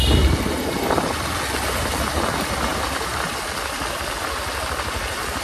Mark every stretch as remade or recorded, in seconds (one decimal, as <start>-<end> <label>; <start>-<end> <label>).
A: 0.0-5.4 recorded